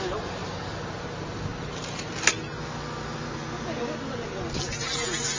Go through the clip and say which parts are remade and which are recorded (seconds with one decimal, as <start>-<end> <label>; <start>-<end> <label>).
0.0-5.4 recorded